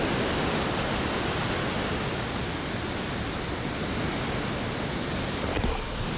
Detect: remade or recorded recorded